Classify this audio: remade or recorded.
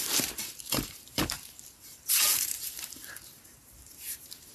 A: remade